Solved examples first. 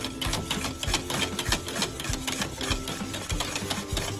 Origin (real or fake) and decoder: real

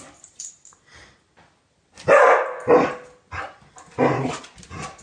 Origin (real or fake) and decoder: real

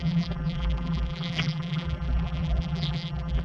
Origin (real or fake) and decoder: fake, vocoder, BigVGAN v2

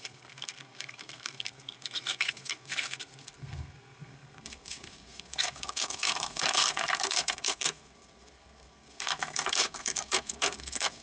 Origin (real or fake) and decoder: fake, codec, SNAC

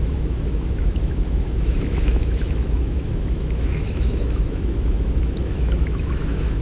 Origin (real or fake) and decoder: fake, autoencoder, DAC-VAE